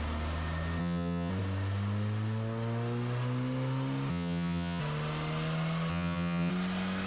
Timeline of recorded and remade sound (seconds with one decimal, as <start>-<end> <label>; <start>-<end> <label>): 0.0-0.8 recorded; 0.8-1.3 remade; 1.3-4.1 recorded; 4.1-4.8 remade; 4.8-5.9 recorded; 5.9-6.5 remade; 6.5-7.1 recorded